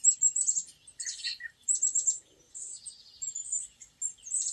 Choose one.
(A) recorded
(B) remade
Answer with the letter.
A